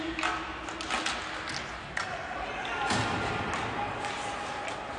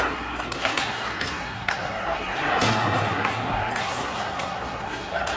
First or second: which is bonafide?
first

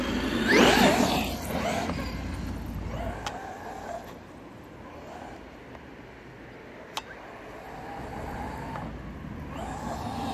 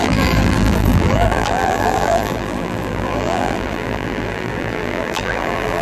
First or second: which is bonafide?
first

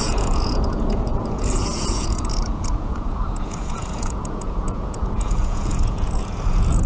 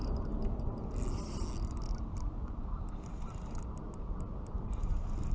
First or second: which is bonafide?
second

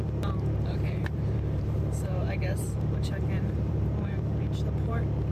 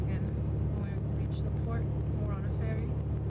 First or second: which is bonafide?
second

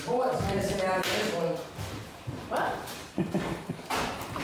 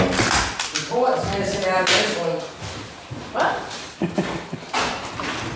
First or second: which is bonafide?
second